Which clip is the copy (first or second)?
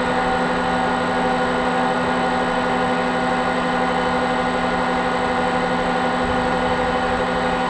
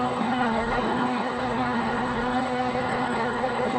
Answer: second